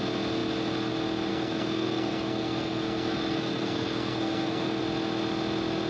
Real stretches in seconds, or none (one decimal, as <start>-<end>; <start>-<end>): 0.0-1.3; 4.8-5.9